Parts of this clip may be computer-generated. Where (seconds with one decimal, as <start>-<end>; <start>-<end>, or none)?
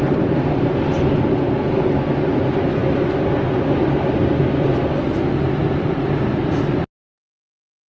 none